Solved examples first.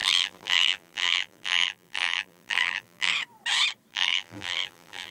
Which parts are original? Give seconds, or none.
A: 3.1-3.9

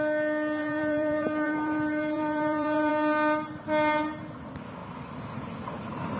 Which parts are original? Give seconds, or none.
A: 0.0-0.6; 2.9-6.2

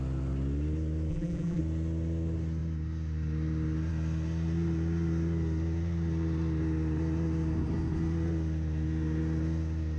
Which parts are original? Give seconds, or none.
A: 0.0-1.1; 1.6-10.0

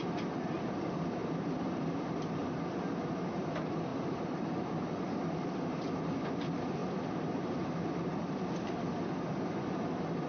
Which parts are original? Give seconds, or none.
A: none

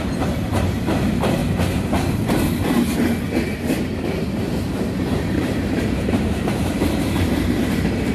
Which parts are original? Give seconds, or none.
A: 1.4-3.7

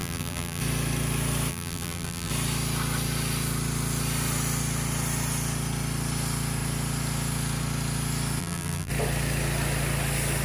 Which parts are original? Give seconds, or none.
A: 0.6-1.5; 2.3-8.4; 8.9-10.4

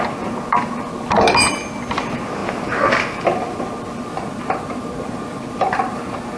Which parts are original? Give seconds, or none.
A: 0.0-4.1

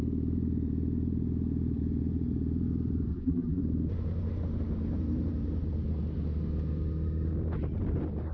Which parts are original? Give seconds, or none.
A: 0.0-3.1; 3.6-8.3